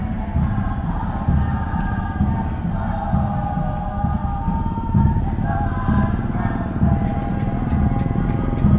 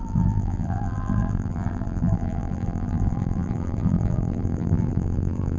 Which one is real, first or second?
first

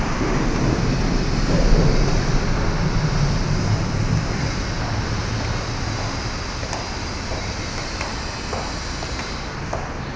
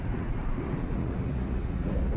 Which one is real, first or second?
first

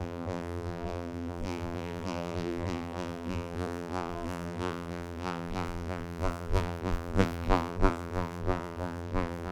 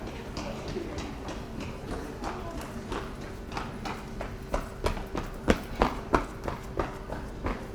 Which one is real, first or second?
second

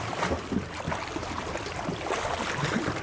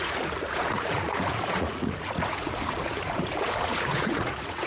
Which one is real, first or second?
first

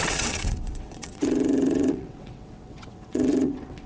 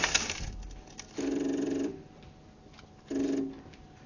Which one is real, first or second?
second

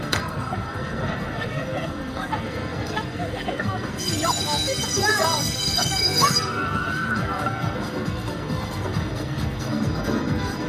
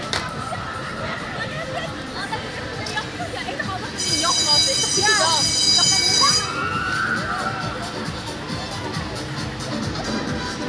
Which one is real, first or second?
second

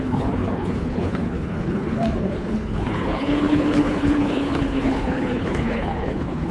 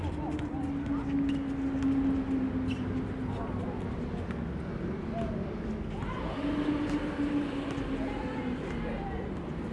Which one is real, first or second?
second